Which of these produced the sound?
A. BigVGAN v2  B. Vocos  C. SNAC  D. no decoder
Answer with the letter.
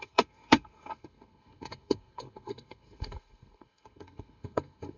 C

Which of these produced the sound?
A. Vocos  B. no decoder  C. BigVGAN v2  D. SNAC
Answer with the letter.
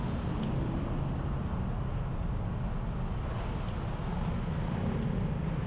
B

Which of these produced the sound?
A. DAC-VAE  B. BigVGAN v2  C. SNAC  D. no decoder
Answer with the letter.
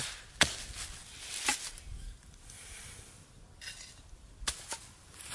D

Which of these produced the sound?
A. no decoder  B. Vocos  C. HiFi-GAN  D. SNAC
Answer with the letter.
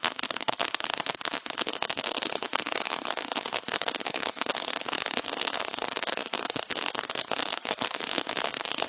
D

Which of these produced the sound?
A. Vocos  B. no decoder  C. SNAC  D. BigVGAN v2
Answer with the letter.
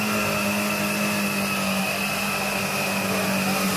B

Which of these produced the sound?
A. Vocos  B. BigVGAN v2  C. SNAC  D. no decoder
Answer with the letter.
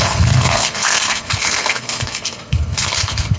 C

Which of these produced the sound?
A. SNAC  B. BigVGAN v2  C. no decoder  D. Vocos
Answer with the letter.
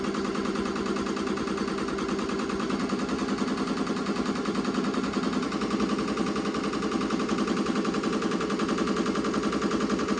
C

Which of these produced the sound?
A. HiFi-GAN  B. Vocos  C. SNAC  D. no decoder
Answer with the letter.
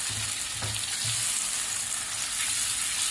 D